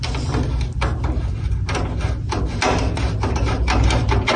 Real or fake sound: real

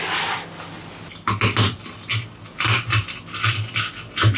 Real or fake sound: real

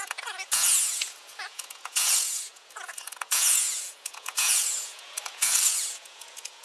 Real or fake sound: fake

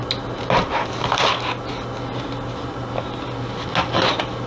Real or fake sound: real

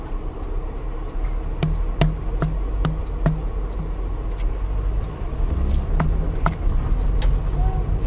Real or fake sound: real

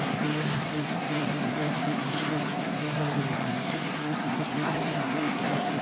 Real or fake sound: fake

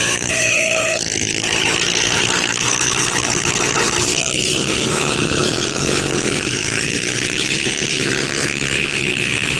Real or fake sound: fake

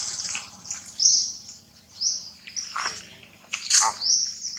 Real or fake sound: real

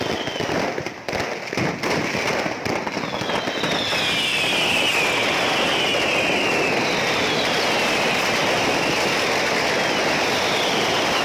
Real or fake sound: real